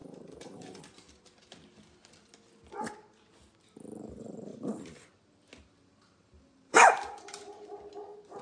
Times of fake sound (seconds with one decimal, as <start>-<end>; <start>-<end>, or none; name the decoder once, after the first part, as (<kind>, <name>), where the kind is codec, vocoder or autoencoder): 0.0-0.8 (vocoder, BigVGAN v2); 4.5-5.2; 5.8-7.9